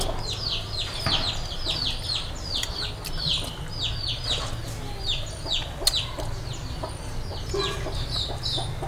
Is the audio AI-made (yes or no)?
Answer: no